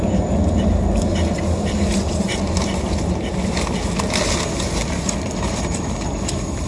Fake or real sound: real